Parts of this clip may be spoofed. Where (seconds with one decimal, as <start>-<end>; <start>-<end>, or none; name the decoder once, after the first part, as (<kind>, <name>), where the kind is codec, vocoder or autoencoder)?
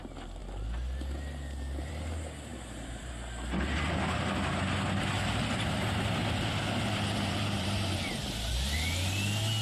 2.5-3.1 (vocoder, BigVGAN v2); 7.3-8.5